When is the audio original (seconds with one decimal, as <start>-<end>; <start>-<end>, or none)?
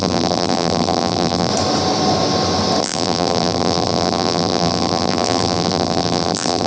1.5-2.8